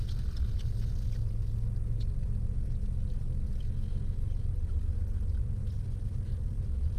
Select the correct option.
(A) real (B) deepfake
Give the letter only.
A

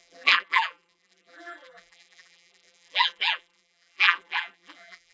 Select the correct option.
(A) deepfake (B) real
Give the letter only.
A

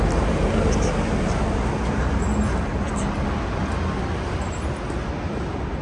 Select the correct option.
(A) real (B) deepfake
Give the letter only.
A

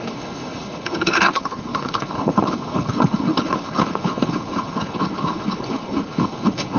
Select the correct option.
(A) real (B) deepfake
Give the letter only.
B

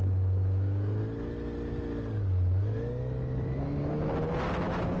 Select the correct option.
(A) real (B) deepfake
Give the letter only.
A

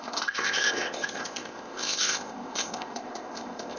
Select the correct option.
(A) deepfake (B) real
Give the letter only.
A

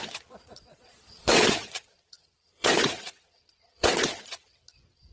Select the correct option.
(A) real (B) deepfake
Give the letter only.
B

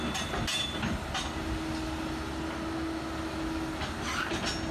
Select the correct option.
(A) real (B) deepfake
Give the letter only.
A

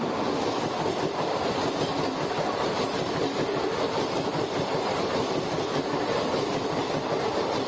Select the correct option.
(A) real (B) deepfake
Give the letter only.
A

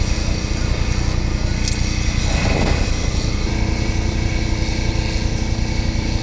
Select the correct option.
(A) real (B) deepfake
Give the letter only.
A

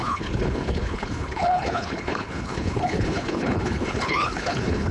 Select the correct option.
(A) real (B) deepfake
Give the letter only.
B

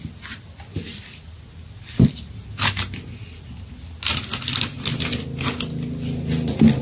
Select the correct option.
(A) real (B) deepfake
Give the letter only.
A